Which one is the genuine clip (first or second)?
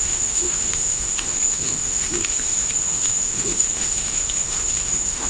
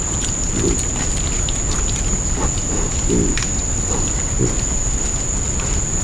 second